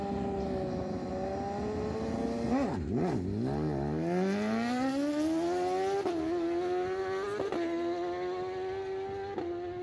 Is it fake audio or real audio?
real